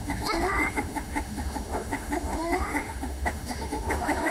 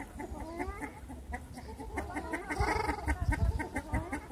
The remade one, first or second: first